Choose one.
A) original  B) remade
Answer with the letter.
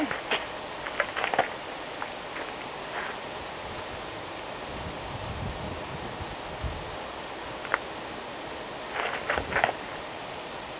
A